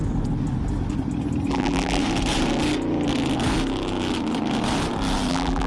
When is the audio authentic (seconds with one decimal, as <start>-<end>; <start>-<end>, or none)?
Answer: 0.0-1.5; 2.0-5.3